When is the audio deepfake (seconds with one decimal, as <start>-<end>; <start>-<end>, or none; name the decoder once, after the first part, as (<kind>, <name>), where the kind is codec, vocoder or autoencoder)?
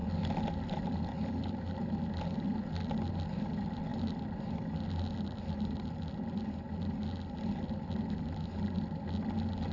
none